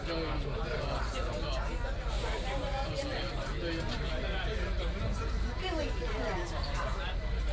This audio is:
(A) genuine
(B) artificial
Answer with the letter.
A